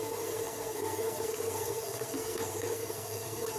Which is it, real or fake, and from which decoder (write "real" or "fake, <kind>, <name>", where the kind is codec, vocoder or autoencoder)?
fake, codec, SNAC